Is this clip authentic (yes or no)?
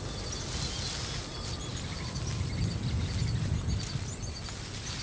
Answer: yes